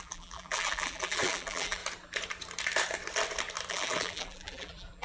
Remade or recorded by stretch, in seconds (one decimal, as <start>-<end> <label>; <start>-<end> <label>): 0.0-1.8 remade; 1.8-3.7 recorded; 3.7-5.0 remade